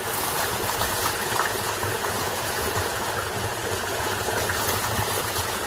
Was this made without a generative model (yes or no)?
no